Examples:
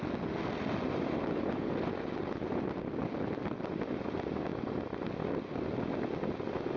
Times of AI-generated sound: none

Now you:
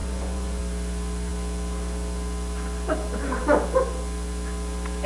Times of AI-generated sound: 0.0-0.6 (vocoder, Vocos)

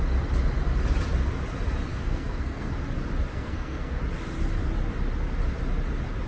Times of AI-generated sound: 1.9-2.7 (codec, SNAC); 3.3-4.0

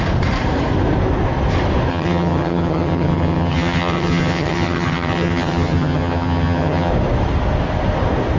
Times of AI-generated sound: 1.9-6.9 (vocoder, HiFi-GAN)

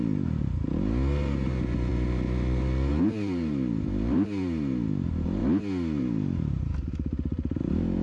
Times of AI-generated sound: 0.0-5.4 (vocoder, BigVGAN v2); 6.0-8.0